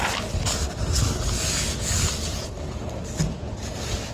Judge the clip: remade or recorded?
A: recorded